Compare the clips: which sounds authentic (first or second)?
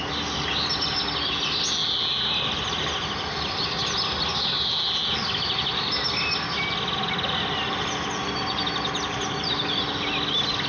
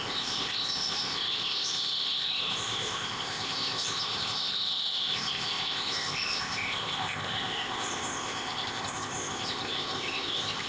first